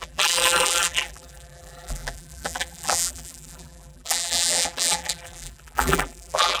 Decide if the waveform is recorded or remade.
remade